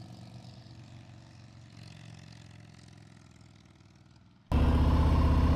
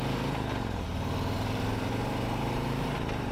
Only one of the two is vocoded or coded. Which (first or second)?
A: second